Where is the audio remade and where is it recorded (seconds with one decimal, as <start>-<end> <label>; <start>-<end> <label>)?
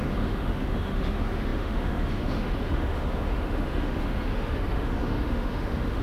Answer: 0.0-6.0 remade